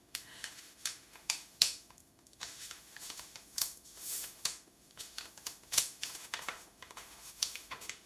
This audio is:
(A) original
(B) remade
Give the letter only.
B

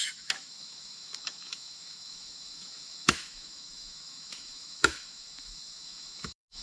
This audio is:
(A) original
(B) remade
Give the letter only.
B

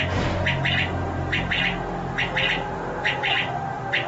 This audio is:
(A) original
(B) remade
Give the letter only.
A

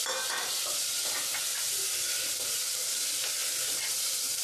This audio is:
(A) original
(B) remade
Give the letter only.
A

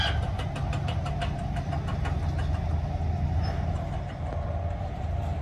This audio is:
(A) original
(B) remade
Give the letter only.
A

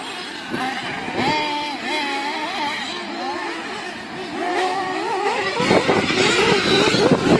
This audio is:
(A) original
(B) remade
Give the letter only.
A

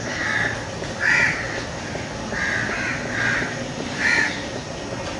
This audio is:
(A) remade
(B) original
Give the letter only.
B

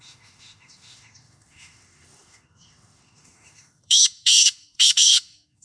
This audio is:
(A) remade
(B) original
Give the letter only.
A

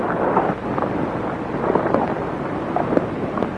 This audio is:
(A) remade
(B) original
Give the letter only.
B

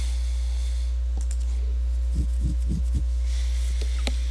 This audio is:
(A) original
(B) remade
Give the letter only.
A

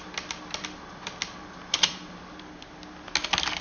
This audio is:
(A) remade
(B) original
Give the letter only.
B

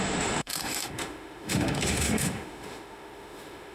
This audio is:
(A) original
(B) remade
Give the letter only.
B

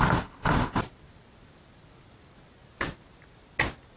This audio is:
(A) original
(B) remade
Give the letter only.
A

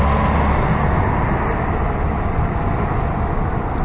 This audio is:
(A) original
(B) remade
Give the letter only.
A